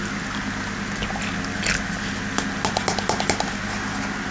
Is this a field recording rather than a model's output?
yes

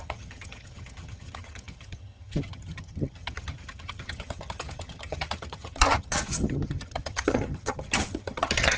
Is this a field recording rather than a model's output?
no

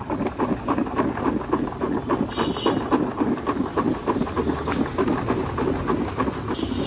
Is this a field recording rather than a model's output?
yes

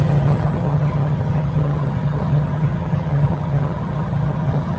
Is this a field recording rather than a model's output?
no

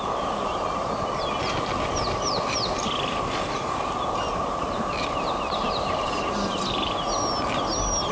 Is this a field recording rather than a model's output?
yes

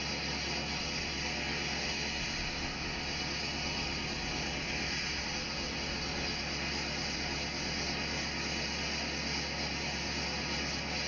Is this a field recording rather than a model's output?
yes